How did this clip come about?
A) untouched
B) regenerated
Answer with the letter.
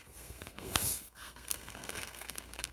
B